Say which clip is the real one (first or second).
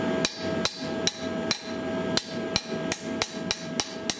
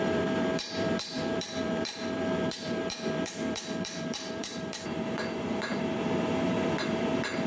first